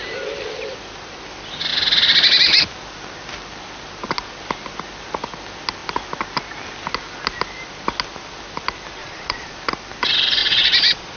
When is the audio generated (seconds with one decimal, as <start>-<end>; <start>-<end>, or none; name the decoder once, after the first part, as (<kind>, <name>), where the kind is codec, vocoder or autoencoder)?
9.0-9.6 (vocoder, Vocos); 10.4-11.2